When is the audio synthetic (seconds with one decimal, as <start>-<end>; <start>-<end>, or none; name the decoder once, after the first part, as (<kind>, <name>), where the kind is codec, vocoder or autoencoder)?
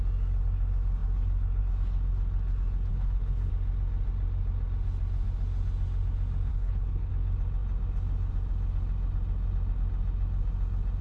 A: 2.9-3.5 (codec, HILCodec); 6.5-7.1